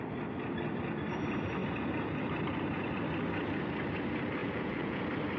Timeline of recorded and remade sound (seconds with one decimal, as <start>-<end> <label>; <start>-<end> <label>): 0.0-4.4 recorded; 4.4-5.0 remade; 5.0-5.4 recorded

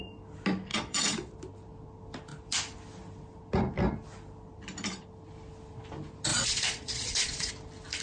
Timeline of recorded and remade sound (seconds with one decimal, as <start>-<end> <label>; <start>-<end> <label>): 0.0-0.7 recorded; 0.7-1.3 remade; 1.3-6.3 recorded; 6.3-7.5 remade; 7.5-8.0 recorded

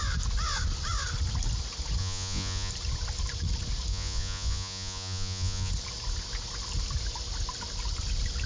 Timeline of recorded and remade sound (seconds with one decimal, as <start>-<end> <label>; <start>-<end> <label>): 0.0-2.0 recorded; 2.0-2.7 remade; 2.7-3.9 recorded; 3.9-5.7 remade; 5.7-8.5 recorded

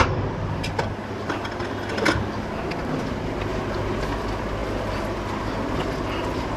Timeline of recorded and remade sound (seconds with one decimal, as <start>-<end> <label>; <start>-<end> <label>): 0.0-6.6 recorded